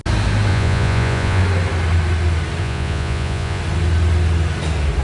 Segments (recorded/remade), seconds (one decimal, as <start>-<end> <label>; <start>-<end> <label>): 0.0-0.5 recorded; 0.5-1.4 remade; 1.4-2.6 recorded; 2.6-3.6 remade; 3.6-5.0 recorded